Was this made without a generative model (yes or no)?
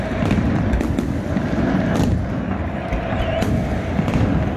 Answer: yes